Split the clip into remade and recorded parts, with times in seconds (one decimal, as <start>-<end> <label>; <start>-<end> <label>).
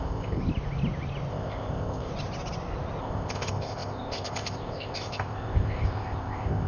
0.0-0.4 remade; 0.4-1.3 recorded; 1.3-2.1 remade; 2.1-3.0 recorded; 3.0-6.7 remade